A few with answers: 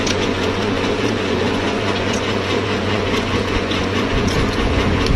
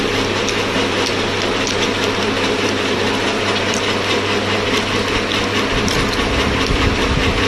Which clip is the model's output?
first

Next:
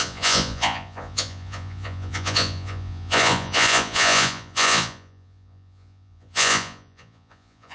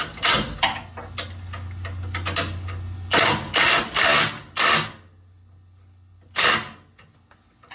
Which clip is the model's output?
first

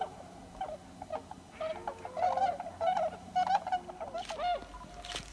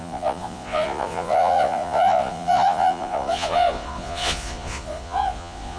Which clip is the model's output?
second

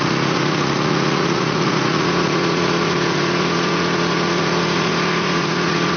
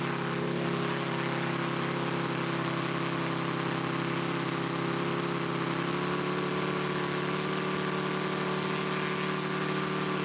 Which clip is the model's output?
first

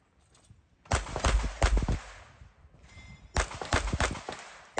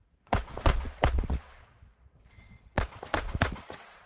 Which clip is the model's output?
second